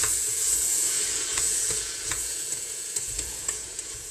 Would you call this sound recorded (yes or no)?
no